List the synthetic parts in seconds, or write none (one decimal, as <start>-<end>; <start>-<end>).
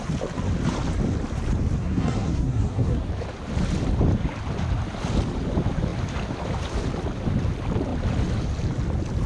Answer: 1.8-3.1